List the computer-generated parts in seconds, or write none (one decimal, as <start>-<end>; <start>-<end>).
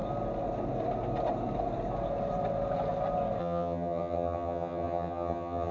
3.4-5.7